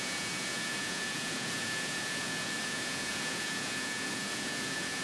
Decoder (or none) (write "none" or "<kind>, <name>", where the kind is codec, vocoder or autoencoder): vocoder, Vocos